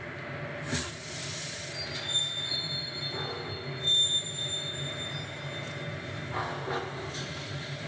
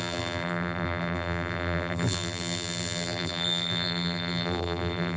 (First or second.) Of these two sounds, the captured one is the first